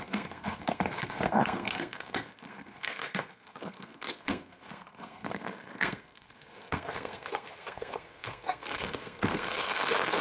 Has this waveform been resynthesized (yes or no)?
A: yes